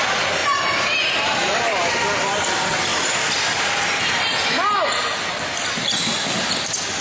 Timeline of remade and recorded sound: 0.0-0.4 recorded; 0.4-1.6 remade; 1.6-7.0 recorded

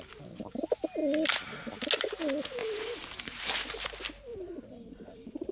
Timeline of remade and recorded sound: 0.0-2.6 recorded; 2.6-3.5 remade; 3.5-4.3 recorded; 4.3-5.5 remade

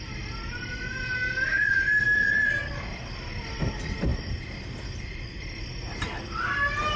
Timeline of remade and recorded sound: 0.0-7.0 recorded